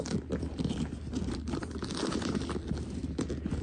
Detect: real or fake fake